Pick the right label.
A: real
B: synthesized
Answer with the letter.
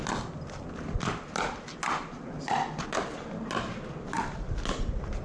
A